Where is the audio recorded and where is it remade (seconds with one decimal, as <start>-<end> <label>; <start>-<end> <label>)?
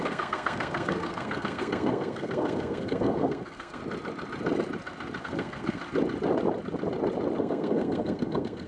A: 0.0-3.8 remade; 3.8-5.2 recorded; 5.2-5.8 remade; 5.8-7.4 recorded; 7.4-8.7 remade